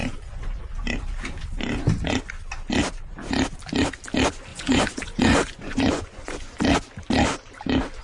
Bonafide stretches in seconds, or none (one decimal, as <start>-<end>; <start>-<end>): 0.6-4.5; 6.6-8.0